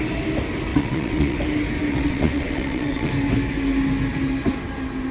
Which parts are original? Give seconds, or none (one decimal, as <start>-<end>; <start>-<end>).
0.0-0.7; 1.4-1.9; 3.1-5.1